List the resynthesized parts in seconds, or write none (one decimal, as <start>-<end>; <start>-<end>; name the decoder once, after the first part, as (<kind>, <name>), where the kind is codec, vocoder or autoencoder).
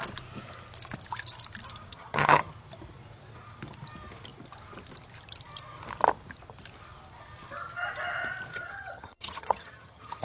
1.9-2.5 (vocoder, HiFi-GAN); 8.5-10.2